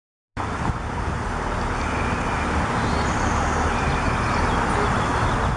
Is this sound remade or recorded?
recorded